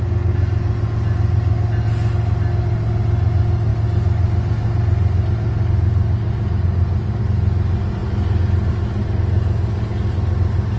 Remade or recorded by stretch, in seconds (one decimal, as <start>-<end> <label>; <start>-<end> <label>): 0.0-10.8 recorded